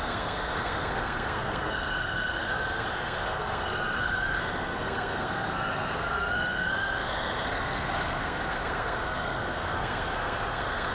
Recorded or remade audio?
remade